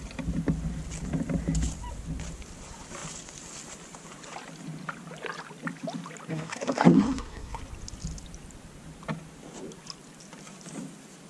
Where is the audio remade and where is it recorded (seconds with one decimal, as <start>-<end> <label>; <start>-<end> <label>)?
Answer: 0.0-6.3 recorded; 6.3-7.6 remade; 7.6-11.3 recorded